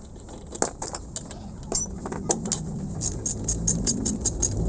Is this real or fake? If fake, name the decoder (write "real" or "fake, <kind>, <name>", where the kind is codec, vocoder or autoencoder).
real